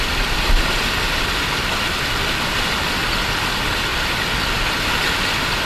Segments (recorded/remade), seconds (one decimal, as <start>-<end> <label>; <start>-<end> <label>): 0.0-5.7 recorded